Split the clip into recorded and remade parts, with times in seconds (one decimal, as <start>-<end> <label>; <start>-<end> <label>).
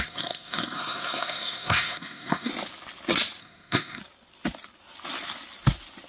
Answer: 0.0-2.5 remade; 2.5-3.4 recorded; 3.4-4.0 remade; 4.0-6.1 recorded